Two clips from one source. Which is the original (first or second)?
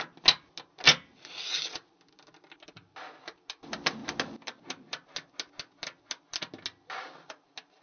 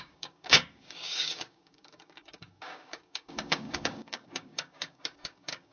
first